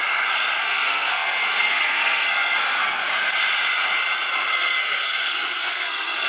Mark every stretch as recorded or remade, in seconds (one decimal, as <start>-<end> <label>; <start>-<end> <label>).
0.0-0.6 recorded; 0.6-3.1 remade; 3.1-4.5 recorded; 4.5-6.3 remade